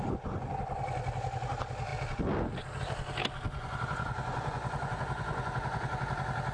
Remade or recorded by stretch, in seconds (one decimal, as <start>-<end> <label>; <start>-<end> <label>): 0.0-3.5 recorded; 3.5-6.0 remade; 6.0-6.5 recorded